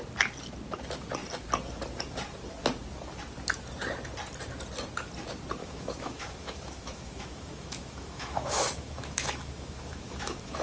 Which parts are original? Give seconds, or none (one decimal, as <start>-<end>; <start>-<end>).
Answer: 0.0-5.6